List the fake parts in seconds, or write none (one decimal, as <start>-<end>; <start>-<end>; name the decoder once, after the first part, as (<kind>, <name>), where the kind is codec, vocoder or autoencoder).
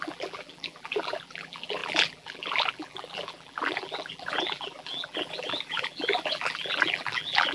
0.0-7.5 (vocoder, BigVGAN v2)